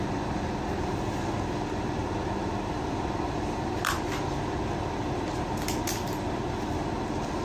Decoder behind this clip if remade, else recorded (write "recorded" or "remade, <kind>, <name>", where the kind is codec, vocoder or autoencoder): recorded